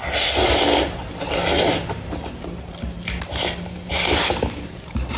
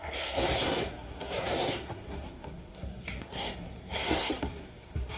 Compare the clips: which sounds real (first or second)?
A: first